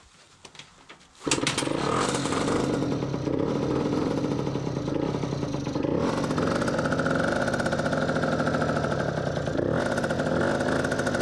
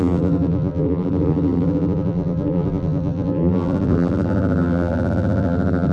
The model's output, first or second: second